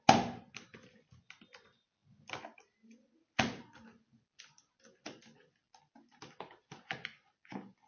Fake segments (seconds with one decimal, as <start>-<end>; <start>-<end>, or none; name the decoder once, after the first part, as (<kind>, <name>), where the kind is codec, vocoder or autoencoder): none